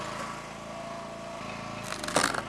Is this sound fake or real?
real